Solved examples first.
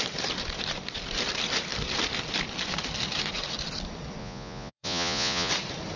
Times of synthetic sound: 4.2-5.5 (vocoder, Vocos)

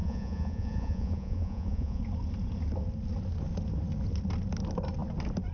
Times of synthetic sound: 0.0-2.0 (vocoder, Vocos)

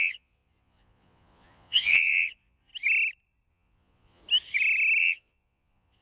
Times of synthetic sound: 0.0-2.7 (vocoder, Vocos); 3.5-4.2; 5.0-6.0

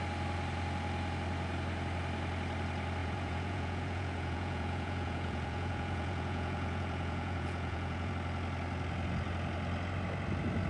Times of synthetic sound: 3.0-8.1 (vocoder, Vocos)

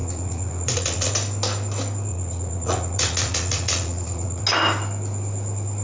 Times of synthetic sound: 0.0-1.1 (vocoder, Vocos); 2.1-4.4